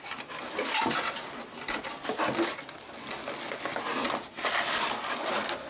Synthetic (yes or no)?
no